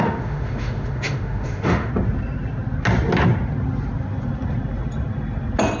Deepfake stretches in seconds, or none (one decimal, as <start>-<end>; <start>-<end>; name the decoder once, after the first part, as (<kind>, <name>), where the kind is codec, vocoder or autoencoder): 0.0-1.9 (autoencoder, DAC-VAE)